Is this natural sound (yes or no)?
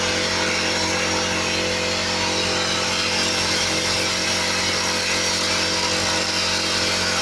yes